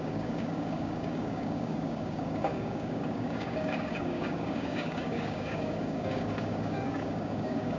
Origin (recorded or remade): remade